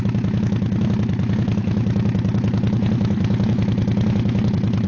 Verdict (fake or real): fake